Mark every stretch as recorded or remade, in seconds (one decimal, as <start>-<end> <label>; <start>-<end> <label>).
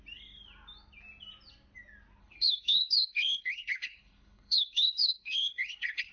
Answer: 0.0-2.2 recorded; 2.2-6.1 remade